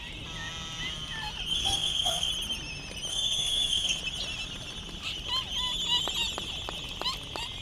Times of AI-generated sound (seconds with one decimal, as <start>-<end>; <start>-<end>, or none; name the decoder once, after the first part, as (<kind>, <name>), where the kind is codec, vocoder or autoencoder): 1.5-2.3 (codec, SNAC); 3.1-4.0